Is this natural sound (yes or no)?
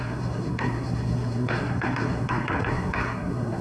no